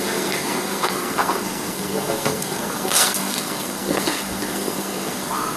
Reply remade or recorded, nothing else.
remade